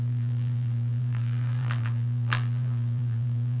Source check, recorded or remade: remade